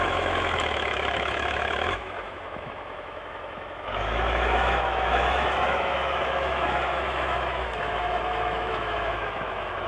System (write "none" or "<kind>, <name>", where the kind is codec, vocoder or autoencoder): autoencoder, DAC-VAE